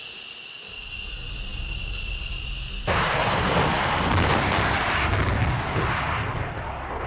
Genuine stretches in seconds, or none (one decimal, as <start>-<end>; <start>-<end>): 0.0-7.1